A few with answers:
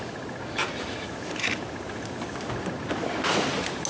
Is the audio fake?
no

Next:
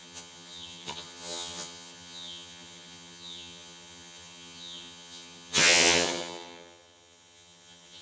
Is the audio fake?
yes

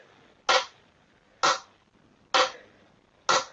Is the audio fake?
no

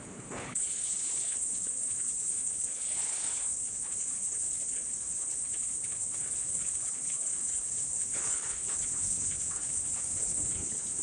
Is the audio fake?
yes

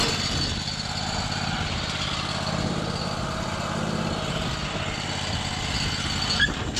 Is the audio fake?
no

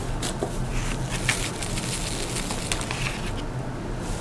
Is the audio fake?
no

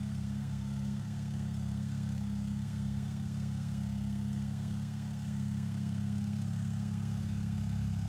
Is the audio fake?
yes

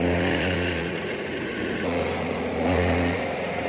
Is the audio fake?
yes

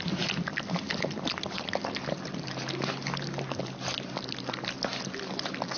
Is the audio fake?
no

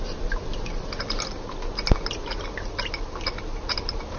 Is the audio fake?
no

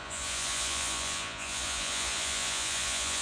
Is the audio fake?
yes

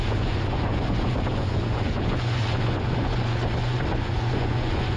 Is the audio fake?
yes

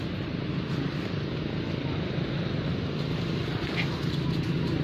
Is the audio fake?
no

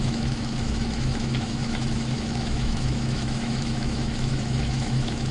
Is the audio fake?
yes